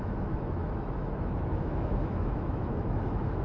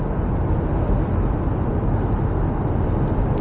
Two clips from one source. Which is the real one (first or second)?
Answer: second